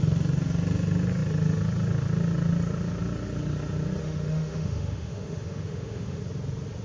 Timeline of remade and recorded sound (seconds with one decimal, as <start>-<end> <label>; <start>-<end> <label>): 0.0-4.0 recorded; 4.0-6.2 remade; 6.2-6.8 recorded

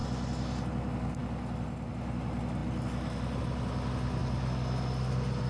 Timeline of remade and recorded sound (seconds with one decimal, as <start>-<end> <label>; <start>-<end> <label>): 0.0-5.5 recorded

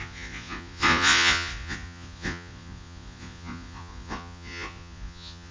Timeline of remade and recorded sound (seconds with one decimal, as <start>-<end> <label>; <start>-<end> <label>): 0.0-5.5 remade